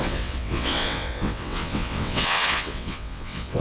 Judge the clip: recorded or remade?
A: remade